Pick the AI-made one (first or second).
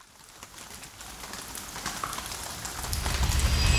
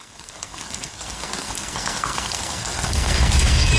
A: second